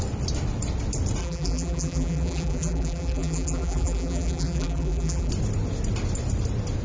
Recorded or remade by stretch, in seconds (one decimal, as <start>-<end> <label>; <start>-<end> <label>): 0.0-1.2 recorded; 1.2-5.3 remade; 5.3-6.8 recorded

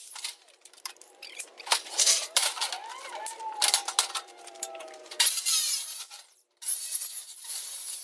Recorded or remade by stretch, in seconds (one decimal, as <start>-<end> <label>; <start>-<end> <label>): 0.0-2.6 remade; 2.6-4.1 recorded; 4.1-8.0 remade